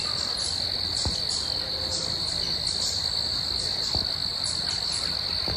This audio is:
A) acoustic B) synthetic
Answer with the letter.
A